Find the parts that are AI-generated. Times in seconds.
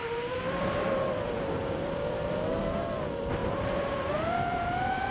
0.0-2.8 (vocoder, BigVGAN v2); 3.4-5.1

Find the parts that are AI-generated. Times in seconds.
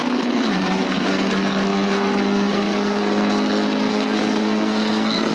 0.0-5.3 (codec, SNAC)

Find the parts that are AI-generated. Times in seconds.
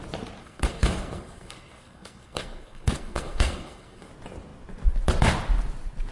0.4-4.1 (codec, SNAC)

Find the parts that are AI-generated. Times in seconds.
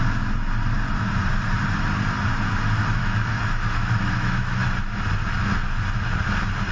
3.0-4.6 (autoencoder, DAC-VAE)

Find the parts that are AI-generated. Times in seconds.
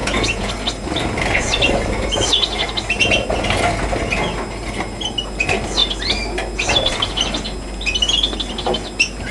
0.0-0.5 (vocoder, Vocos)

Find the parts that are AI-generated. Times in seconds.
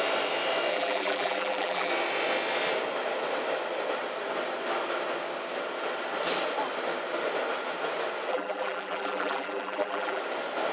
0.7-1.9 (vocoder, BigVGAN v2); 8.3-10.2